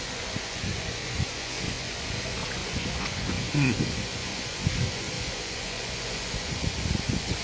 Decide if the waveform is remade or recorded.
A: remade